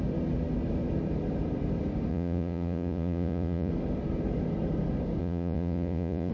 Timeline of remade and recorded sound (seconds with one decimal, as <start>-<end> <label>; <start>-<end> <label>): 0.0-2.1 recorded; 2.1-3.7 remade; 3.7-5.2 recorded; 5.2-6.3 remade